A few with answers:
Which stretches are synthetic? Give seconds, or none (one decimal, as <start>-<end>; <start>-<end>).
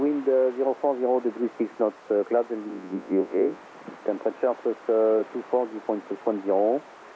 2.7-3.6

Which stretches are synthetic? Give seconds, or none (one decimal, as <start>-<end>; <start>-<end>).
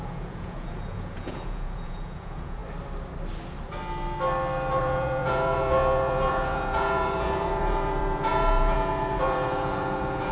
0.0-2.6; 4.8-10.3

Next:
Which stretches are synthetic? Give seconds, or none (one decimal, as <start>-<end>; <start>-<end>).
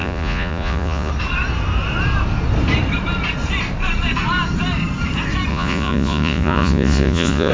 0.0-1.1; 5.5-7.5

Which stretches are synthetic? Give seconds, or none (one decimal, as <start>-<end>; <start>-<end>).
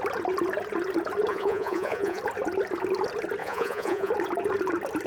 1.3-2.2; 3.4-4.1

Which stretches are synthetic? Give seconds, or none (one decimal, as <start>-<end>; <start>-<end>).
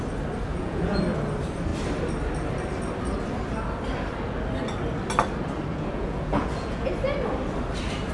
0.5-1.0; 5.7-6.9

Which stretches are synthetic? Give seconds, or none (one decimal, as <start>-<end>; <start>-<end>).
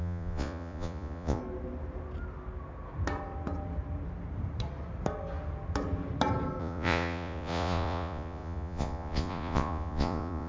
0.0-1.4; 6.6-10.5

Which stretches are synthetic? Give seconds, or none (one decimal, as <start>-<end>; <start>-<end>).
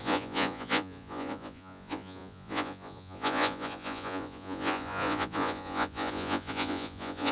0.0-7.3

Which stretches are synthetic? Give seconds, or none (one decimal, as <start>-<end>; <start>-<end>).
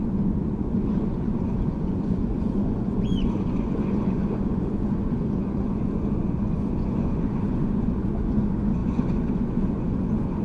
0.0-10.4